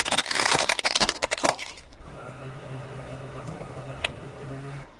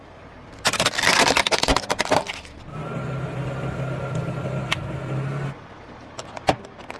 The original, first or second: second